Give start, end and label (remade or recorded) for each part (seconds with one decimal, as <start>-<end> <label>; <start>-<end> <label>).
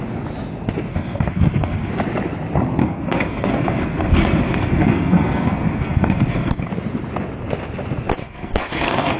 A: 0.0-0.9 recorded; 0.9-1.9 remade; 1.9-2.8 recorded; 2.8-6.7 remade; 6.7-8.2 recorded; 8.2-9.2 remade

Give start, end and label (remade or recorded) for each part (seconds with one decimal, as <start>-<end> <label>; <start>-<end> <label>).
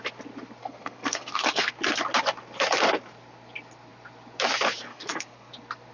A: 0.0-0.6 recorded; 0.6-1.7 remade; 1.7-4.9 recorded; 4.9-5.5 remade; 5.5-5.9 recorded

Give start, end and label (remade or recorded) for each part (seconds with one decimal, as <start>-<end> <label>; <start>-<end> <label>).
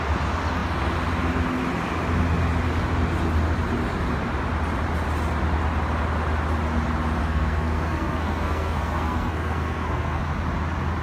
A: 0.0-7.2 recorded; 7.2-10.2 remade; 10.2-11.0 recorded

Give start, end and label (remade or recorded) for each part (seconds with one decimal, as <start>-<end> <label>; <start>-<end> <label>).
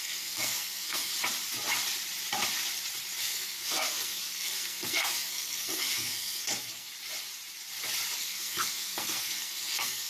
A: 0.0-1.1 remade; 1.1-3.2 recorded; 3.2-6.9 remade; 6.9-8.2 recorded; 8.2-10.1 remade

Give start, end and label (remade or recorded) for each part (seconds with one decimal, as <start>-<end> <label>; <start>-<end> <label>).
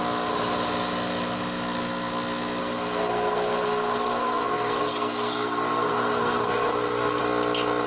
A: 0.0-2.6 recorded; 2.6-7.2 remade; 7.2-7.9 recorded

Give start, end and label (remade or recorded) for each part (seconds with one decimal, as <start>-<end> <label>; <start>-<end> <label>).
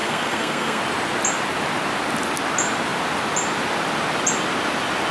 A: 0.0-0.8 remade; 0.8-5.1 recorded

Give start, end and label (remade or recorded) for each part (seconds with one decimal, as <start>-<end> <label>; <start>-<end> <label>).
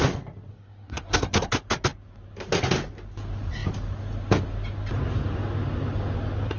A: 0.0-0.5 recorded; 0.5-1.5 remade; 1.5-6.6 recorded